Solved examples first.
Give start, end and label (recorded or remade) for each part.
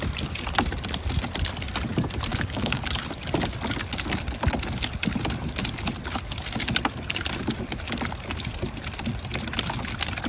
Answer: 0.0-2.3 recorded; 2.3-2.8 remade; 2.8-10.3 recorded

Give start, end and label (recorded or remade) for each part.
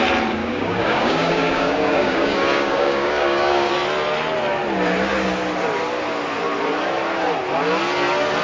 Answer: 0.0-0.4 recorded; 0.4-3.7 remade; 3.7-8.4 recorded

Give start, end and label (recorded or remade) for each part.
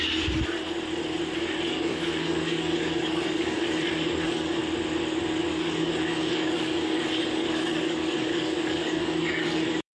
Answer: 0.0-1.7 recorded; 1.7-4.6 remade; 4.6-5.5 recorded; 5.5-9.9 remade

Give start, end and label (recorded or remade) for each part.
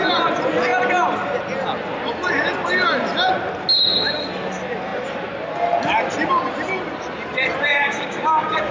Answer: 0.0-7.7 recorded; 7.7-8.7 remade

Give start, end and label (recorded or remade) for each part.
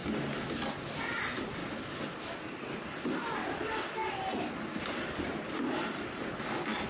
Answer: 0.0-6.9 recorded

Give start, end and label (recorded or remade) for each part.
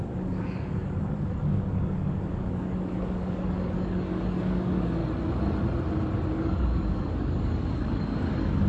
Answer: 0.0-5.0 remade; 5.0-6.3 recorded; 6.3-8.7 remade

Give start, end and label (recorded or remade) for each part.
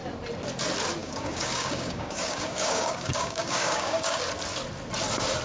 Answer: 0.0-1.0 recorded; 1.0-4.2 remade; 4.2-5.4 recorded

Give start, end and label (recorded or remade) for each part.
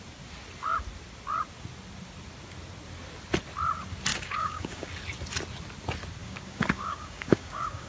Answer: 0.0-4.1 recorded; 4.1-4.9 remade; 4.9-6.2 recorded; 6.2-7.9 remade